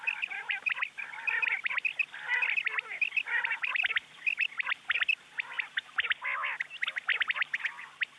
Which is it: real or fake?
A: real